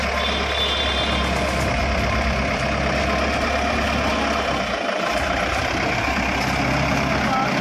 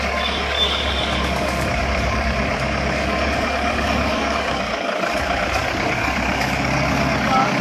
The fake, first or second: second